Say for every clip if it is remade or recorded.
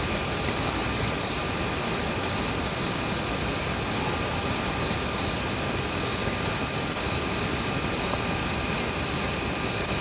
recorded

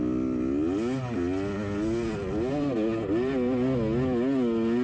recorded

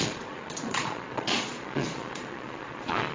remade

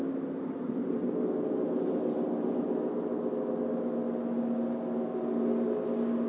recorded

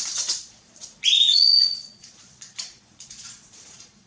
remade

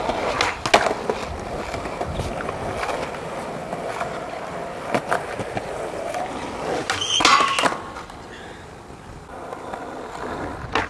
recorded